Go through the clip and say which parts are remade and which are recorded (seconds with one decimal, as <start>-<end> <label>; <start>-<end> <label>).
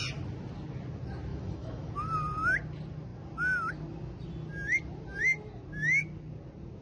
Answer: 0.0-1.3 recorded; 1.3-1.9 remade; 1.9-6.8 recorded